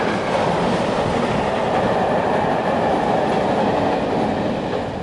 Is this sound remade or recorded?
recorded